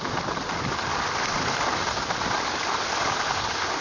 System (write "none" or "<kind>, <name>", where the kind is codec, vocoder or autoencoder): none